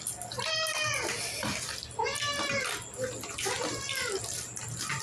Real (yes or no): yes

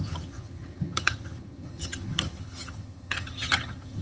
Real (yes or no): no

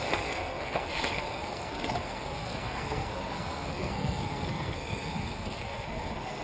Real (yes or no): no